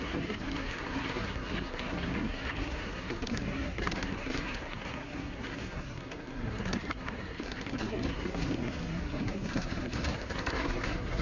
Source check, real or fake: fake